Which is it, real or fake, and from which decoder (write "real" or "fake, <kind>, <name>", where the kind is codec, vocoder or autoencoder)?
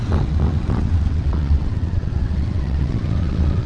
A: fake, vocoder, WaveNeXt